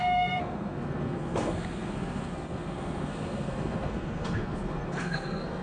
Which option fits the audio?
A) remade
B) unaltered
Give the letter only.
A